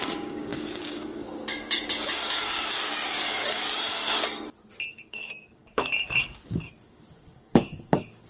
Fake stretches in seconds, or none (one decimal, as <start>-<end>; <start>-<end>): 0.0-3.7; 4.9-8.3